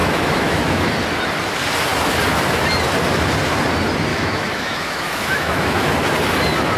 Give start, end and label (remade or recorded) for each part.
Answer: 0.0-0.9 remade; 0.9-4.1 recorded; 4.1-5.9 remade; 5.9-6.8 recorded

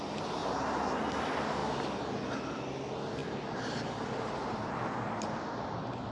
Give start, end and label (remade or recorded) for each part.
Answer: 0.0-0.4 recorded; 0.4-1.0 remade; 1.0-3.2 recorded; 3.2-4.9 remade; 4.9-6.1 recorded

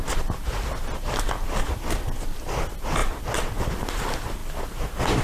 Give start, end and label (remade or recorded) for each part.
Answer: 0.0-5.2 recorded

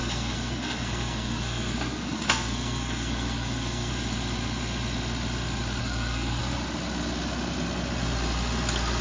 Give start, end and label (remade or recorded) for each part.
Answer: 0.0-3.9 remade; 3.9-5.8 recorded; 5.8-6.4 remade; 6.4-9.0 recorded

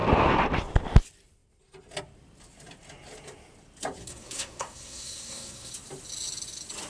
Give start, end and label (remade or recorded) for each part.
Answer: 0.0-4.0 recorded; 4.0-5.7 remade; 5.7-6.9 recorded

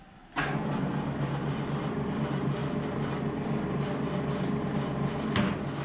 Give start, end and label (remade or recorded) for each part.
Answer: 0.0-5.8 recorded

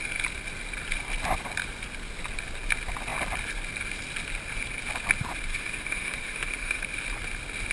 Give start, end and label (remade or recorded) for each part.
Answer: 0.0-5.5 recorded; 5.5-6.8 remade; 6.8-7.7 recorded

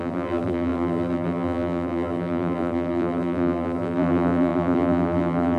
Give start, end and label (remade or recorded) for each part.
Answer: 0.0-5.6 remade